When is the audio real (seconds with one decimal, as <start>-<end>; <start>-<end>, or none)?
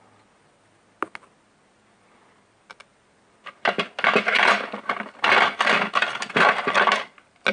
0.0-7.5